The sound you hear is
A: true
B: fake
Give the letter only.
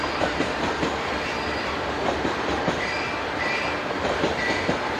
B